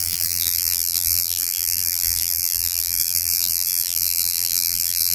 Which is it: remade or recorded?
remade